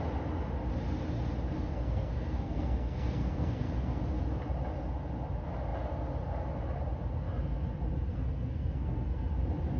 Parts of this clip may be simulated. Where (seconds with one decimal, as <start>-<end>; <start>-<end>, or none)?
1.7-4.0; 8.1-9.3

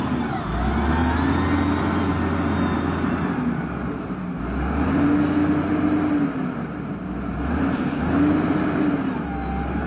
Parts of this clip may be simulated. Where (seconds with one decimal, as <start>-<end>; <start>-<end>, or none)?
none

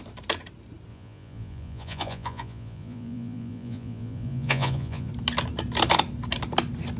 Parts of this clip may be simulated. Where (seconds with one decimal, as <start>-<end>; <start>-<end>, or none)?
0.9-5.1

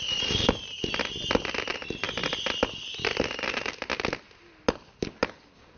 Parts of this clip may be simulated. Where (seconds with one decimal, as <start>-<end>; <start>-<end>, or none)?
none

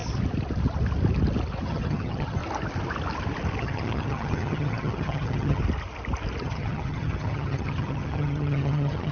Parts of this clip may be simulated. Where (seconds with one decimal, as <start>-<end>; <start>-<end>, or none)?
1.6-2.4; 3.6-5.6; 6.4-9.1

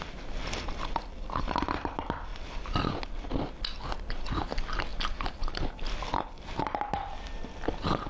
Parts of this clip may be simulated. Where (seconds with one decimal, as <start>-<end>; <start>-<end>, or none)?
none